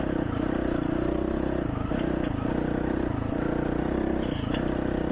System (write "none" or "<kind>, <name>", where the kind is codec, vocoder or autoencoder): none